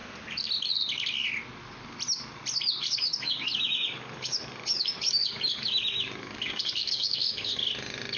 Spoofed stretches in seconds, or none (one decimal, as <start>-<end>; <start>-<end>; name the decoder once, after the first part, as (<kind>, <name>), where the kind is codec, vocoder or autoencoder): 2.8-7.7 (codec, DAC)